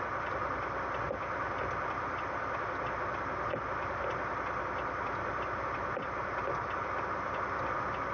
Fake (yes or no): no